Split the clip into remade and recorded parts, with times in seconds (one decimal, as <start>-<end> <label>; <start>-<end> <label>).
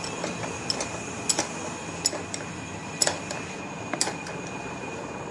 0.0-5.3 recorded